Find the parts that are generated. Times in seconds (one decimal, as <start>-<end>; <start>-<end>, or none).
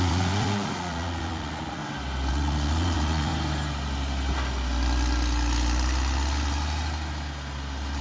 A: 0.0-1.8; 2.3-3.3